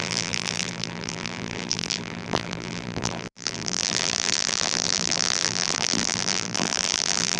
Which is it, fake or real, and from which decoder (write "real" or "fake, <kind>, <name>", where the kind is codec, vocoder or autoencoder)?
fake, vocoder, BigVGAN v2